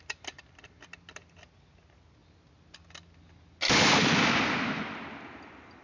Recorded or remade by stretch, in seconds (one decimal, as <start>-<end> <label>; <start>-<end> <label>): 0.0-5.8 recorded